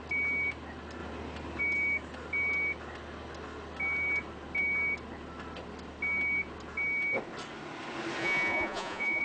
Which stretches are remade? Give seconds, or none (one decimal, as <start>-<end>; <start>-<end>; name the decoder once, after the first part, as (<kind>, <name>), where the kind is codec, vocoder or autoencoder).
8.2-9.2 (vocoder, Vocos)